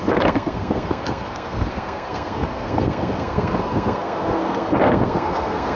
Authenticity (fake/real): fake